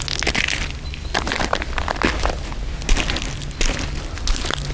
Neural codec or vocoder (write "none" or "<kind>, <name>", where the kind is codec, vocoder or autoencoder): none